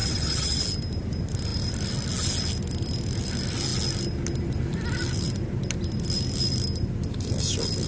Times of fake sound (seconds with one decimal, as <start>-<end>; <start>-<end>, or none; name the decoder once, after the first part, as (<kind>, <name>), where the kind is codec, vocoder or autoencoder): 0.0-0.6 (vocoder, WaveNeXt)